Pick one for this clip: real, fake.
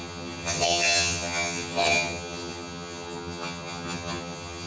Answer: fake